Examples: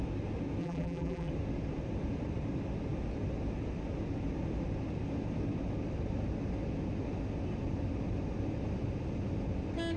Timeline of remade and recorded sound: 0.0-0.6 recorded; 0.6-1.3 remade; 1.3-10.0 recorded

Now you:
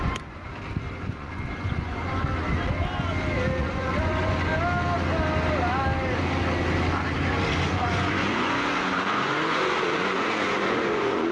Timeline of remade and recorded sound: 0.0-0.5 remade; 0.5-1.0 recorded; 1.0-2.3 remade; 2.3-3.6 recorded; 3.6-4.5 remade; 4.5-7.7 recorded; 7.7-11.3 remade

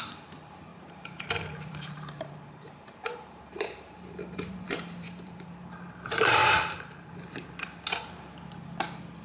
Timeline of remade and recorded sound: 0.0-0.7 recorded; 0.7-5.5 remade; 5.5-6.4 recorded; 6.4-7.1 remade; 7.1-9.2 recorded

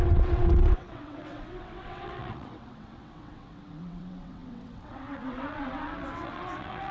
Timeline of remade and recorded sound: 0.0-6.9 remade

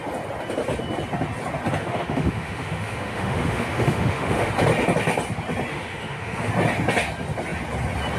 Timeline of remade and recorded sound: 0.0-1.8 recorded; 1.8-4.5 remade; 4.5-5.7 recorded; 5.7-6.5 remade; 6.5-8.2 recorded

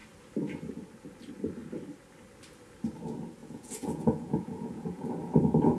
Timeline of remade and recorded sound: 0.0-3.4 recorded; 3.4-5.8 remade

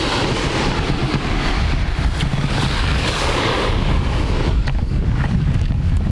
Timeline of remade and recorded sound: 0.0-1.0 recorded; 1.0-1.7 remade; 1.7-2.3 recorded; 2.3-6.1 remade